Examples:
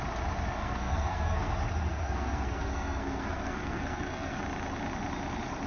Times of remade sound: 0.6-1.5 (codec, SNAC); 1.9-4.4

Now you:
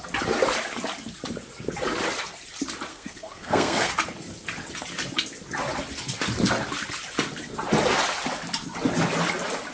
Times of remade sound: 2.9-3.9 (codec, SNAC)